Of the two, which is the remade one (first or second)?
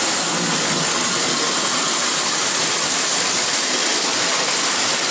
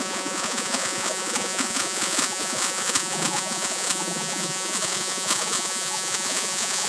second